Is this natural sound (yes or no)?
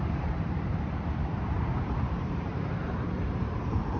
no